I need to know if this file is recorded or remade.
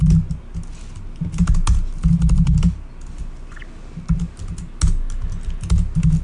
recorded